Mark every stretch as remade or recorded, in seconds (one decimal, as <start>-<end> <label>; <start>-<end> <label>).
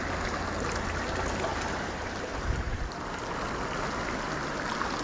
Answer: 0.0-1.5 recorded; 1.5-3.3 remade; 3.3-5.0 recorded